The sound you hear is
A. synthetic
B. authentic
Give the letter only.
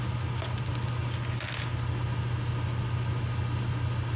B